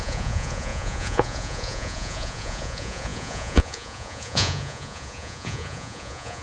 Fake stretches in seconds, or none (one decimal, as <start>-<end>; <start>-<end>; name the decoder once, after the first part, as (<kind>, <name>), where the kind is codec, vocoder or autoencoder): 0.0-6.4 (vocoder, Vocos)

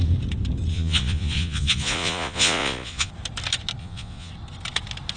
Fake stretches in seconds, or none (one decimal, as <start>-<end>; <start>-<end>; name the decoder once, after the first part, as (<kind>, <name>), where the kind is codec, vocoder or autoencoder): 0.7-3.1 (vocoder, Vocos); 3.8-4.3

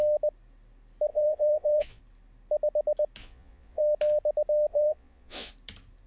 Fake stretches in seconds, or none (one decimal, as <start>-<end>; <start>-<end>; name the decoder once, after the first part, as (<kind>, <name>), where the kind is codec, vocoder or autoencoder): 1.1-2.0 (vocoder, Vocos); 3.2-3.8; 4.7-5.5